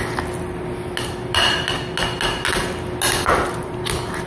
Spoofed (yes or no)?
no